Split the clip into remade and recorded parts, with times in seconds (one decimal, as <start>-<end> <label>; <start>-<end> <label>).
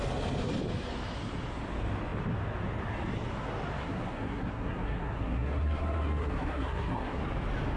0.0-3.8 recorded; 3.8-7.2 remade; 7.2-7.8 recorded